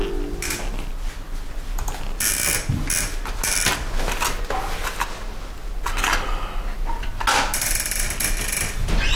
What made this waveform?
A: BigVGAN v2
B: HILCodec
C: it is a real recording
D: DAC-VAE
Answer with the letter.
C